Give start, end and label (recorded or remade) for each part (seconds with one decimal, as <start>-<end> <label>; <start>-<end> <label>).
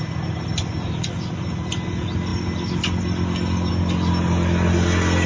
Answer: 0.0-5.3 recorded